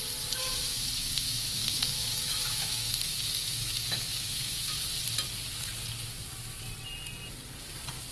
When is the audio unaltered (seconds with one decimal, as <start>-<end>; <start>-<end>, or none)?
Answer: 0.0-0.4; 4.8-8.1